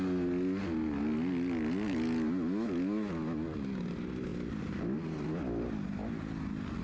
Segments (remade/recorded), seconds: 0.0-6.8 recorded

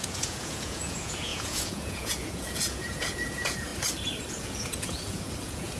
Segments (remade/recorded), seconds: 0.0-3.7 remade; 3.7-4.3 recorded; 4.3-5.8 remade

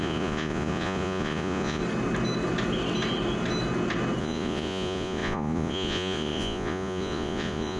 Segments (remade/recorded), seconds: 0.0-1.8 remade; 1.8-4.2 recorded; 4.2-7.8 remade

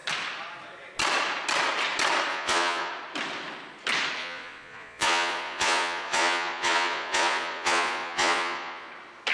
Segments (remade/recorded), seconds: 0.0-2.3 recorded; 2.3-2.9 remade; 2.9-4.2 recorded; 4.2-8.9 remade; 8.9-9.3 recorded

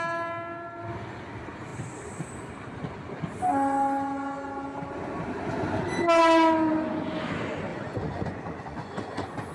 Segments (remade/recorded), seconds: 0.0-7.7 recorded; 7.7-9.5 remade

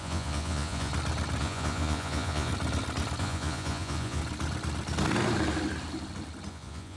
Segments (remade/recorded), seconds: 0.0-0.9 remade; 0.9-1.4 recorded; 1.4-2.5 remade; 2.5-3.2 recorded; 3.2-4.2 remade; 4.2-6.5 recorded; 6.5-7.0 remade

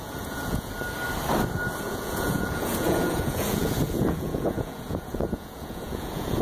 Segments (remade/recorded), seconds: 0.0-0.7 remade; 0.7-1.8 recorded; 1.8-6.4 remade